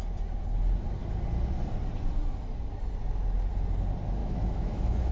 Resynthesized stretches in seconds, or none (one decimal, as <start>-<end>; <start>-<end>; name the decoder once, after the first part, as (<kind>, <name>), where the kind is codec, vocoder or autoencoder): 4.2-5.1 (autoencoder, DAC-VAE)